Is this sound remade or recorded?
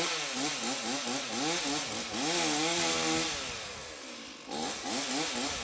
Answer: recorded